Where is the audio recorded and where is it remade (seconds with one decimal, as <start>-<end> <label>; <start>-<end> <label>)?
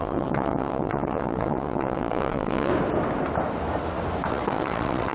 0.0-2.7 remade; 2.7-4.3 recorded; 4.3-5.1 remade